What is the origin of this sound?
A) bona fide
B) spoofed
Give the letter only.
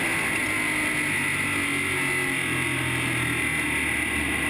A